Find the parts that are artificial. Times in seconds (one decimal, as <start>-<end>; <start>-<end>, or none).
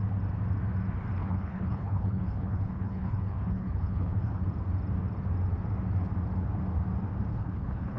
1.2-4.4; 7.3-8.0